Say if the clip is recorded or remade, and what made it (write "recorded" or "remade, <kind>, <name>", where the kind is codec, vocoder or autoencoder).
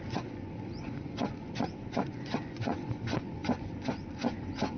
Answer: remade, vocoder, Vocos